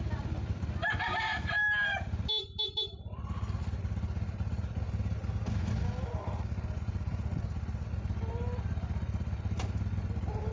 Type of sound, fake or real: real